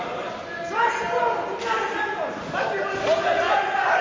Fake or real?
real